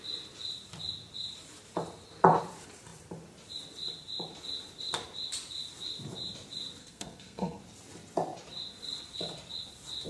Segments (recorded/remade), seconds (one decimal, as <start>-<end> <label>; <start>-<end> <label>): 0.0-6.8 recorded; 6.8-7.6 remade; 7.6-10.1 recorded

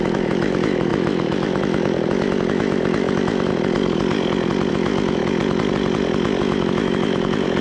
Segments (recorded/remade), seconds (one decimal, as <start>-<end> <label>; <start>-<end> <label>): 0.0-3.5 remade; 3.5-4.7 recorded; 4.7-5.2 remade; 5.2-6.4 recorded; 6.4-7.6 remade

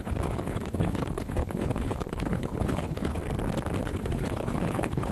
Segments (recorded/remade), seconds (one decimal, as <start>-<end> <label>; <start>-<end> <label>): 0.0-3.2 remade; 3.2-3.8 recorded; 3.8-5.1 remade

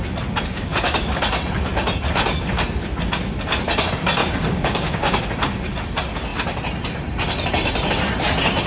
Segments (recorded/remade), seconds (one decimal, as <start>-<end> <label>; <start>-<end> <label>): 0.0-0.5 recorded; 0.5-1.2 remade; 1.2-4.2 recorded; 4.2-5.2 remade; 5.2-8.7 recorded

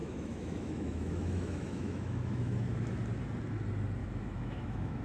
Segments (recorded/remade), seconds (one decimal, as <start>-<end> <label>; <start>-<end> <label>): 0.0-3.0 remade; 3.0-4.0 recorded; 4.0-5.0 remade

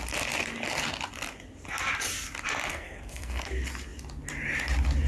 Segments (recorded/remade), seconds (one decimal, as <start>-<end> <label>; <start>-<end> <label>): 0.0-2.7 recorded; 2.7-3.5 remade; 3.5-5.1 recorded